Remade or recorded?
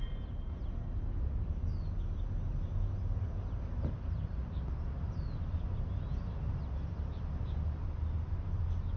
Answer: recorded